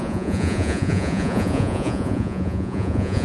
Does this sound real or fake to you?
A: fake